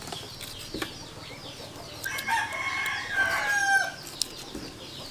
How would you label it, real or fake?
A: real